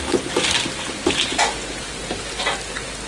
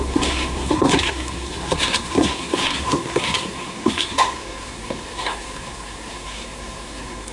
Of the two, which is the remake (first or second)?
second